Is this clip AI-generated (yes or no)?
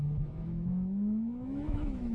yes